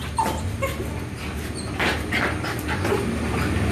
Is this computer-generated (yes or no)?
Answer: no